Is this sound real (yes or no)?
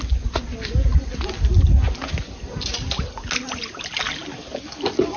yes